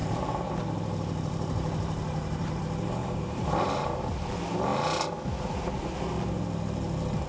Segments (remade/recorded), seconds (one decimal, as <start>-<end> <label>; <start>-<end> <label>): 0.0-2.6 remade; 2.6-3.0 recorded; 3.0-4.1 remade; 4.1-7.3 recorded